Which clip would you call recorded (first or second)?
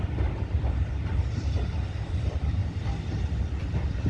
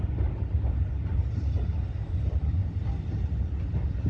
second